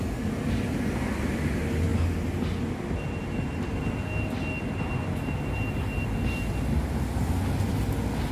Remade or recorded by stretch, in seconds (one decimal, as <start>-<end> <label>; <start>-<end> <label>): 0.0-8.3 recorded